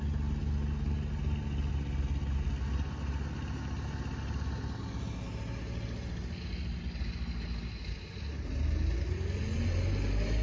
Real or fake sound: real